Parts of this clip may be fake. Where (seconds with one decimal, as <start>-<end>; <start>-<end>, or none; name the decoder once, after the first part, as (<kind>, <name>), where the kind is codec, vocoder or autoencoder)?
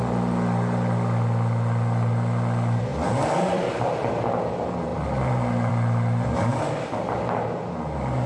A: 2.9-3.9 (vocoder, BigVGAN v2); 6.5-7.3